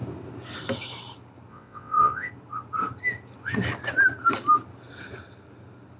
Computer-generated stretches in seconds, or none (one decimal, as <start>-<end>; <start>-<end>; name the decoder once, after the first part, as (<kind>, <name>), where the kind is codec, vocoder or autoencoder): 1.5-2.3 (vocoder, WaveNeXt)

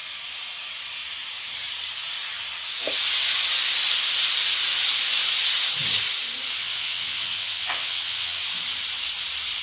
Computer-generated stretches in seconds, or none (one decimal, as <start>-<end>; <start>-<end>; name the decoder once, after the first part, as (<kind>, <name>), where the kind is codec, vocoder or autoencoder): 6.6-8.4 (vocoder, WaveNeXt)